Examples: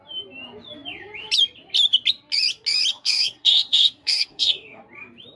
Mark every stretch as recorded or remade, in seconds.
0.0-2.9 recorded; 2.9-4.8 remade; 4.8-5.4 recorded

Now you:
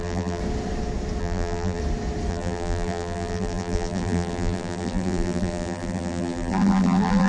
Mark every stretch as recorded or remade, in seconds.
0.0-0.4 remade; 0.4-1.2 recorded; 1.2-1.8 remade; 1.8-2.3 recorded; 2.3-7.3 remade

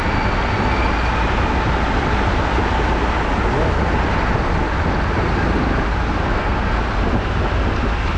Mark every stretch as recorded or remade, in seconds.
0.0-6.2 recorded; 6.2-6.8 remade; 6.8-8.2 recorded

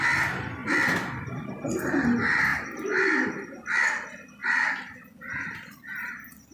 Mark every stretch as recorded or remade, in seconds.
0.0-2.5 recorded; 2.5-3.9 remade; 3.9-4.4 recorded; 4.4-6.1 remade; 6.1-6.5 recorded

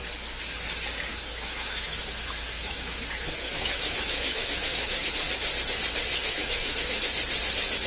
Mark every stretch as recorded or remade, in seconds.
0.0-1.1 recorded; 1.1-5.1 remade; 5.1-6.1 recorded; 6.1-7.0 remade; 7.0-7.9 recorded

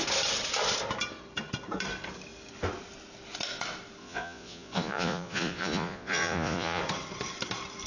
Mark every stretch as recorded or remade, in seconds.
0.0-4.0 recorded; 4.0-6.8 remade; 6.8-7.9 recorded

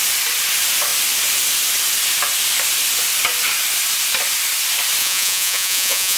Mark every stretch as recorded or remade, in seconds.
0.0-5.0 recorded; 5.0-6.2 remade